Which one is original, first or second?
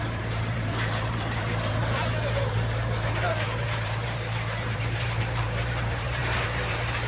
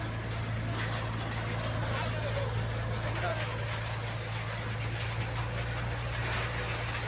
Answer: second